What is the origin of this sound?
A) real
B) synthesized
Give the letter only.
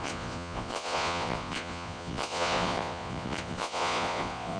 B